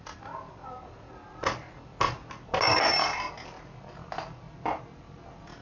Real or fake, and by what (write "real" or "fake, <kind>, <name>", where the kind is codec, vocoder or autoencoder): real